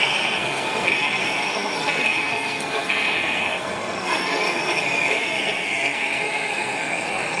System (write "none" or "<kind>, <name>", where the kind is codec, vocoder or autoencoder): codec, SNAC